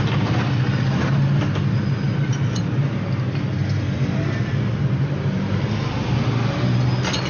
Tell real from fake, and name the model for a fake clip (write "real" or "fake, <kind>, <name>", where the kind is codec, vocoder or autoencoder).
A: real